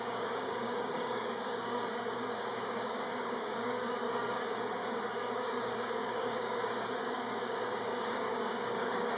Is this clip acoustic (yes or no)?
no